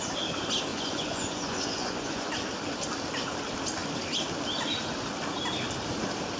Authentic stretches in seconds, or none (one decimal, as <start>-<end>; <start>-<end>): 0.0-0.7; 2.3-6.4